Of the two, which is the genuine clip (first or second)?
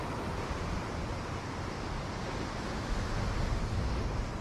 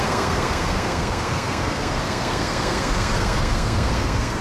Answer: first